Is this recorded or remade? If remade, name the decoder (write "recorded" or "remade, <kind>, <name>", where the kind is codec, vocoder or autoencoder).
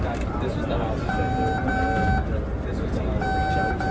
recorded